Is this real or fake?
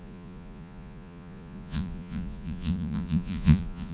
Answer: fake